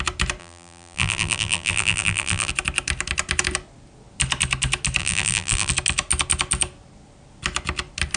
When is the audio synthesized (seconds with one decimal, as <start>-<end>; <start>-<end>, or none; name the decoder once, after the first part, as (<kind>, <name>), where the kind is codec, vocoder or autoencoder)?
0.4-2.5 (vocoder, BigVGAN v2); 5.0-5.7